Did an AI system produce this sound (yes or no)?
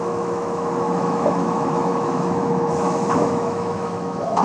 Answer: yes